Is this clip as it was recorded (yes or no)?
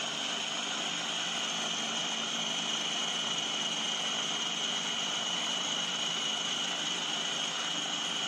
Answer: no